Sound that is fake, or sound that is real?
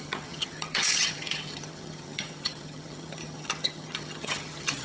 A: fake